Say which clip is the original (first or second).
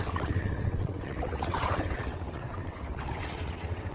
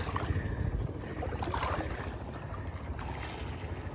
second